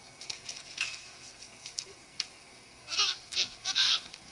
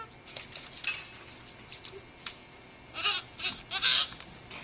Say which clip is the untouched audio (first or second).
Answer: second